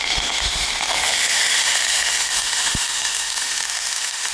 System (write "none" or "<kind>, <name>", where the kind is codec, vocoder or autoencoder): autoencoder, DAC-VAE